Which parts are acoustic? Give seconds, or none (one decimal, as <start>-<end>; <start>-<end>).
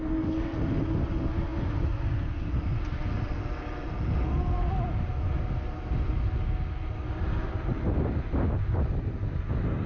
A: 0.0-9.9